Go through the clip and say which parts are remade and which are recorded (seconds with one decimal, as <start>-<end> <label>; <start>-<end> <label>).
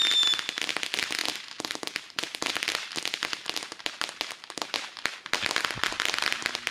0.0-5.8 recorded; 5.8-6.7 remade